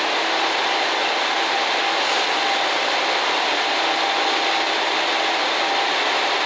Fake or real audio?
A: real